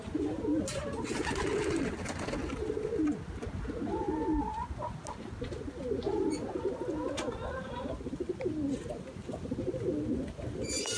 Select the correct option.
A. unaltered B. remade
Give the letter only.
A